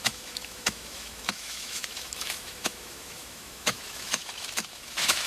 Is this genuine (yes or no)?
no